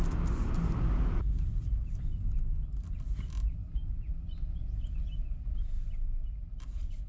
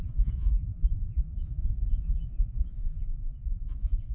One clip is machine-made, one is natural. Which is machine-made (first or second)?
second